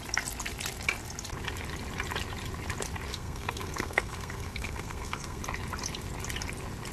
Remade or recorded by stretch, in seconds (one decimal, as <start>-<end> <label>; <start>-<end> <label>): 0.0-3.1 recorded; 3.1-5.4 remade; 5.4-6.9 recorded